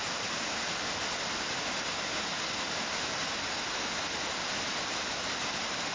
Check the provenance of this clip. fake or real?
real